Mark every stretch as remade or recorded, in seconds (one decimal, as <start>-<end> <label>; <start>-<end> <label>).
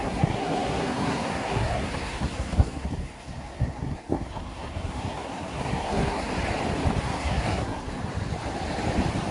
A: 0.0-6.3 remade; 6.3-7.0 recorded; 7.0-8.0 remade; 8.0-9.3 recorded